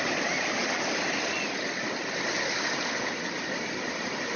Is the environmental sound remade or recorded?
recorded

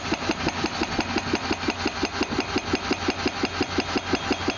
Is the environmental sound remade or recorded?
recorded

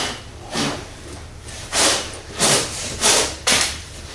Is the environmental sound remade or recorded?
remade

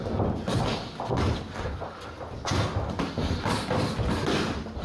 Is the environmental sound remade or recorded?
recorded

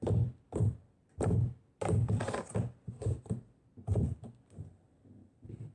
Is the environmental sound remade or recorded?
recorded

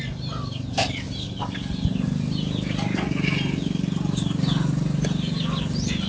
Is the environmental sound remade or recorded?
recorded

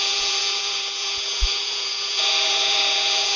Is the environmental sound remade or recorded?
remade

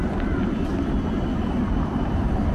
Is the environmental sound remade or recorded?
recorded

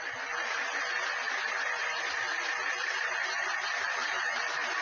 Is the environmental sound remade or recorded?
recorded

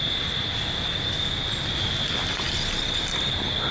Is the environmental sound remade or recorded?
recorded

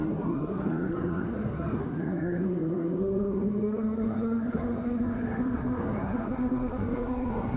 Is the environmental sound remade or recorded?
remade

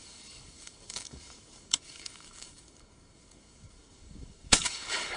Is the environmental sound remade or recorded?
remade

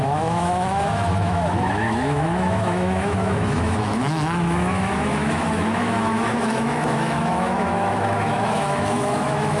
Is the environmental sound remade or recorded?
remade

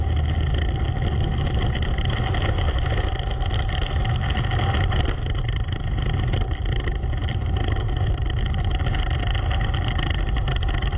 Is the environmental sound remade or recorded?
recorded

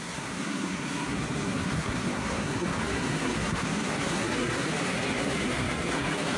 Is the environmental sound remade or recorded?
remade